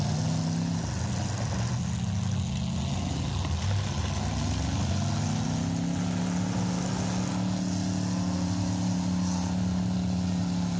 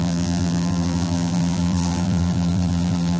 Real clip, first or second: first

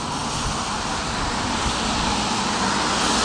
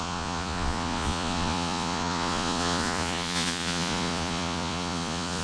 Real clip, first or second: first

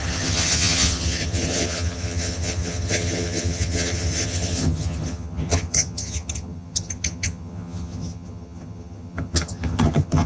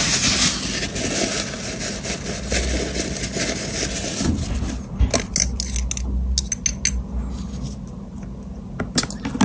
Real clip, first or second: second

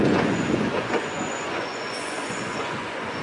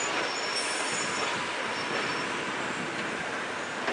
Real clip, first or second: second